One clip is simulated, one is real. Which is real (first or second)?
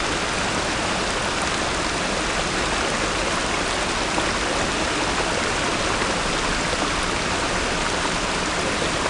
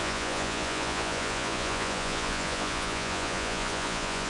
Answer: first